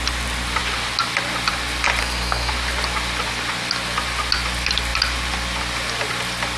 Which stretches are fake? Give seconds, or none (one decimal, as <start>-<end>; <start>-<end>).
2.0-2.5